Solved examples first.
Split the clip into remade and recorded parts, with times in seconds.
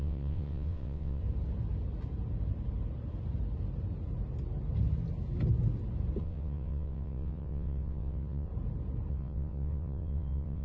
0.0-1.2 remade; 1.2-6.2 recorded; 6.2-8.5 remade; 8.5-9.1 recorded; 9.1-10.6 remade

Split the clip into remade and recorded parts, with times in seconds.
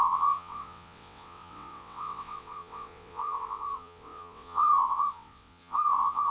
0.0-6.3 remade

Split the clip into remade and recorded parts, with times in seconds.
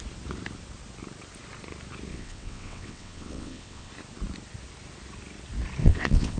0.0-2.1 recorded; 2.1-3.9 remade; 3.9-5.8 recorded; 5.8-6.4 remade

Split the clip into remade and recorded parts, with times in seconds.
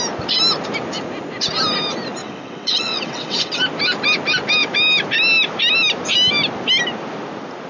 0.0-2.2 recorded; 2.2-3.6 remade; 3.6-7.7 recorded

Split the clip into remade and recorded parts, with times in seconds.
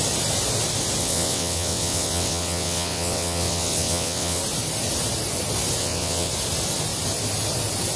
0.0-1.0 recorded; 1.0-4.4 remade; 4.4-5.8 recorded; 5.8-6.3 remade; 6.3-8.0 recorded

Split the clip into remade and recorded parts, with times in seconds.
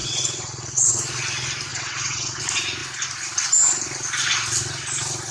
0.0-0.9 remade; 0.9-1.7 recorded; 1.7-2.4 remade; 2.4-5.3 recorded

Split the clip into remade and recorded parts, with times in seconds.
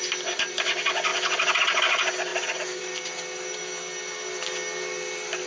0.0-5.5 recorded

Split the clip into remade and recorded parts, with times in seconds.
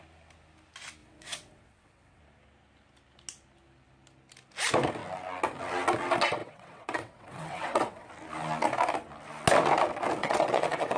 0.0-1.0 recorded; 1.0-2.2 remade; 2.2-6.4 recorded; 6.4-8.1 remade; 8.1-10.2 recorded; 10.2-11.0 remade